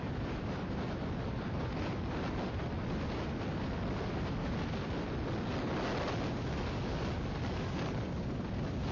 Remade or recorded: recorded